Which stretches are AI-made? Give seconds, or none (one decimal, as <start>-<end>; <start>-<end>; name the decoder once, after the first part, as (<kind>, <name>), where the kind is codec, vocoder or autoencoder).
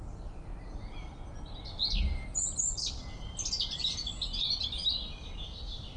none